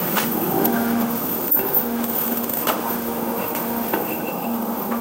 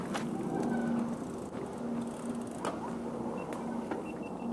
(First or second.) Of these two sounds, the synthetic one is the first